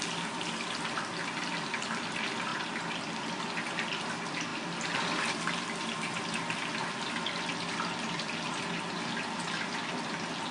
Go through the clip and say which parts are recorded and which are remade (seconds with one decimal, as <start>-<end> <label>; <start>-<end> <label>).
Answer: 0.0-10.5 recorded